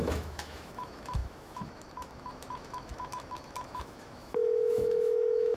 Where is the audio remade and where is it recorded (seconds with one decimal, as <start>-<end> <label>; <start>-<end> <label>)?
0.0-5.6 remade